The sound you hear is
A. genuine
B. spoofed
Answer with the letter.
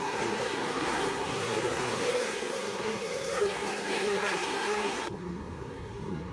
B